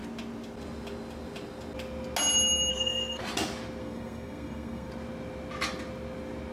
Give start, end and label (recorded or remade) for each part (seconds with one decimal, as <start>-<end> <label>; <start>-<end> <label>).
0.0-2.7 recorded; 2.7-3.2 remade; 3.2-3.8 recorded; 3.8-4.9 remade; 4.9-6.5 recorded